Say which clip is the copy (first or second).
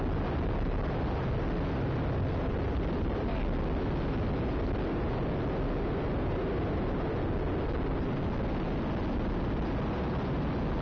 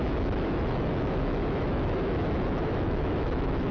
second